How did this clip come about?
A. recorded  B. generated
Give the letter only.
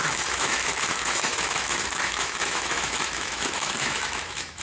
B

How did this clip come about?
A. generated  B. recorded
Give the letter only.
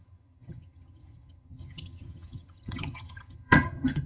A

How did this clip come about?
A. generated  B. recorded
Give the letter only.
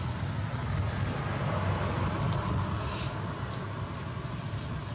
B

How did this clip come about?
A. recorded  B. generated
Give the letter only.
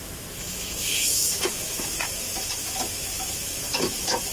B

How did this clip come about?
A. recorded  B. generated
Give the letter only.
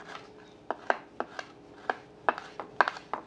A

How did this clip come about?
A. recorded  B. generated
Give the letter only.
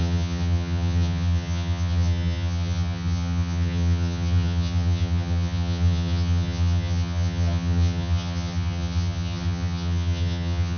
B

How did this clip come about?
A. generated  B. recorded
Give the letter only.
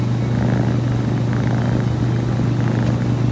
B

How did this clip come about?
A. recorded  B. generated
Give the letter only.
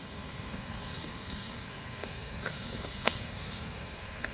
B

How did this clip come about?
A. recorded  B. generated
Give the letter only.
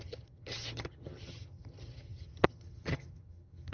B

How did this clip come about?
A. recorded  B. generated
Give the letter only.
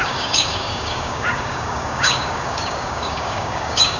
B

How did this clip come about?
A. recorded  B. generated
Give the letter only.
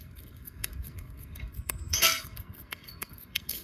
B